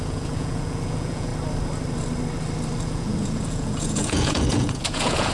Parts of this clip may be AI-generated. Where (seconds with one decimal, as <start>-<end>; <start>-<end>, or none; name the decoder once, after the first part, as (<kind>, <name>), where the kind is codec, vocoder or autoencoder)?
0.0-1.3 (vocoder, Vocos); 2.8-5.3